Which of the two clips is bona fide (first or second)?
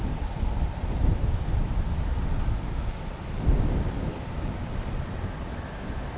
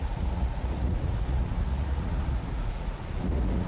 first